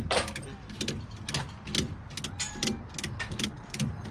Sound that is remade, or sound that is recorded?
recorded